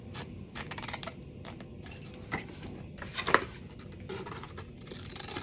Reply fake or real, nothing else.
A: real